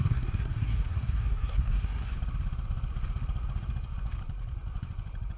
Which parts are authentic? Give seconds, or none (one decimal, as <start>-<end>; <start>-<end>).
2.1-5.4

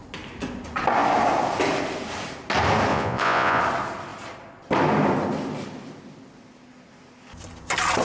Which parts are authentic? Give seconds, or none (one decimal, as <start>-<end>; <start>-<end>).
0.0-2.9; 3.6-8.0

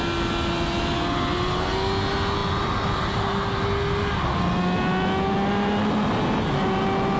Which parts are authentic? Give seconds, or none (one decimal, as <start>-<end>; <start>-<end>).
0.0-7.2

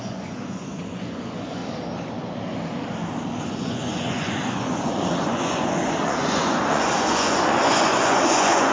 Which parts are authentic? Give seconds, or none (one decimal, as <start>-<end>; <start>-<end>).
1.6-3.4